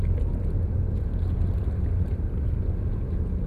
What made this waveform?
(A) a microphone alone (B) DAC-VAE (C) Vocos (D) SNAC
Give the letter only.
A